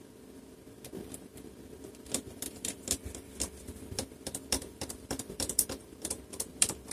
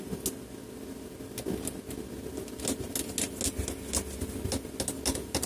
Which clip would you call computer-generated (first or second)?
first